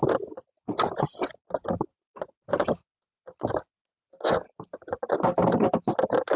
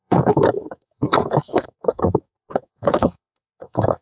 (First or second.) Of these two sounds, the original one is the first